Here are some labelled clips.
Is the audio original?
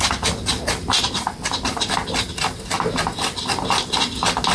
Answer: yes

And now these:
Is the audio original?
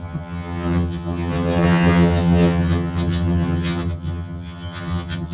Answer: no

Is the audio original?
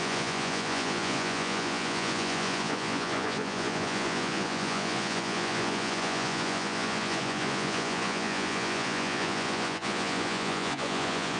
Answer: no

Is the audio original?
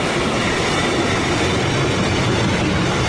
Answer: yes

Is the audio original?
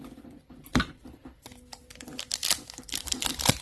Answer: no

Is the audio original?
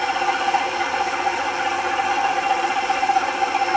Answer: yes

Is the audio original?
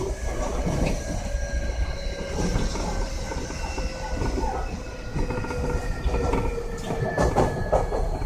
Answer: yes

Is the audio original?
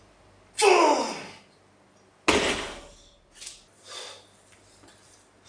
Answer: yes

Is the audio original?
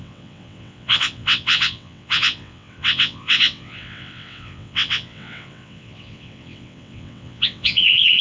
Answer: no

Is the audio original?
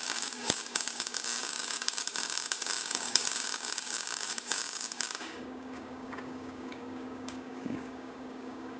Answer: no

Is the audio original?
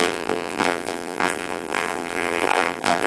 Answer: no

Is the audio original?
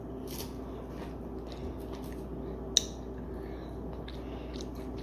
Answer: yes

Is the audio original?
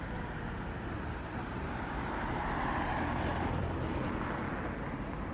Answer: yes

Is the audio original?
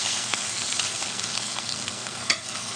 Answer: no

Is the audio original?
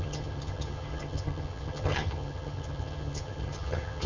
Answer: no